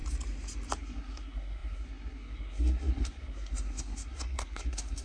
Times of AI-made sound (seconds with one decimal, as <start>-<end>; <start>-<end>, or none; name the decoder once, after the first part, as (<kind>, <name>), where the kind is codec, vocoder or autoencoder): 0.8-5.0 (codec, SNAC)